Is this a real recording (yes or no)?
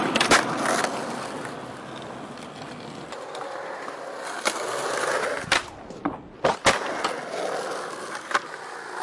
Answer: yes